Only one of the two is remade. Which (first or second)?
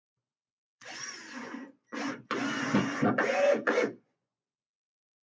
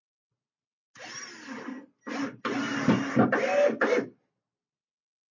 first